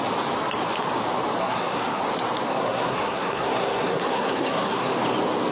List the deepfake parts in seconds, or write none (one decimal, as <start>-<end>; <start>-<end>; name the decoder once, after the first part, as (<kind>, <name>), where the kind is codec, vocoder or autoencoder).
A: 1.4-2.0 (codec, SNAC); 2.5-4.9